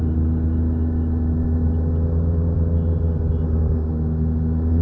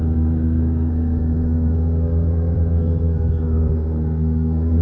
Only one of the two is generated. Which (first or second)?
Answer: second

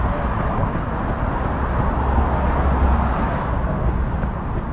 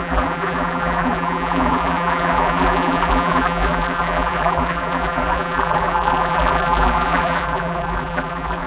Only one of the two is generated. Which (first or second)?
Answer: second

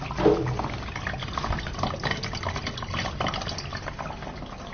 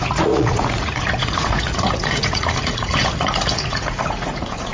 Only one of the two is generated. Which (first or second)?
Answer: second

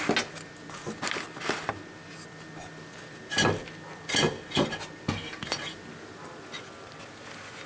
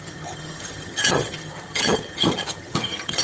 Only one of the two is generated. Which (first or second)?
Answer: second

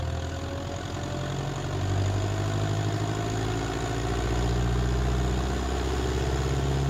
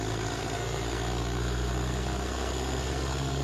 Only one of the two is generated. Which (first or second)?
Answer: second